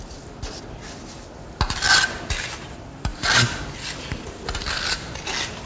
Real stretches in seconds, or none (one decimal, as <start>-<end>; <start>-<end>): 0.0-5.7